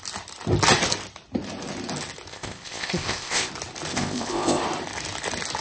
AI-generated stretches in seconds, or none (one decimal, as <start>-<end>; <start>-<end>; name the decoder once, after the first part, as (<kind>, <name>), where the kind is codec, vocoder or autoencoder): 2.3-3.5 (codec, ZipCodec); 3.9-4.6